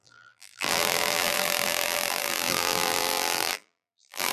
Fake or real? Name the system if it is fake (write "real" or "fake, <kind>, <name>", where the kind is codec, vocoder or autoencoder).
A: fake, vocoder, BigVGAN v2